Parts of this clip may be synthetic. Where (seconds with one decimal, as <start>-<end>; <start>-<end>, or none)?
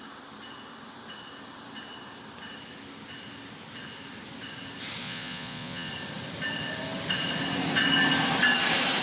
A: 5.0-5.9